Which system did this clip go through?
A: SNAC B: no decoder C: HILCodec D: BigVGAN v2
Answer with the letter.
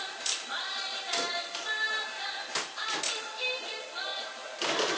D